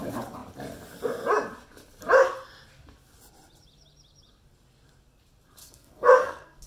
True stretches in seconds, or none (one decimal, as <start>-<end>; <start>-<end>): 0.0-5.6